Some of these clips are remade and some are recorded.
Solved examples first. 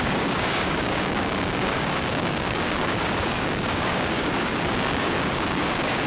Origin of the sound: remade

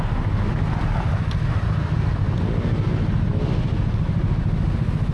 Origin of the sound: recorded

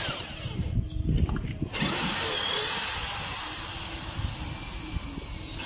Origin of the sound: recorded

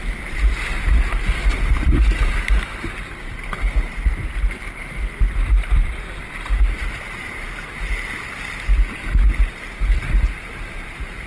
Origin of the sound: recorded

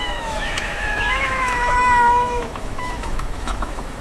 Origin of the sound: remade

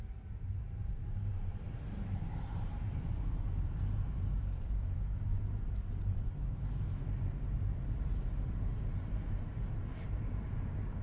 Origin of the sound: remade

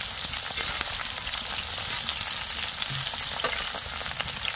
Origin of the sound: recorded